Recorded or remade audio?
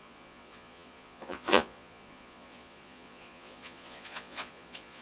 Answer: remade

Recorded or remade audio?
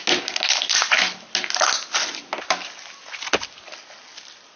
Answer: recorded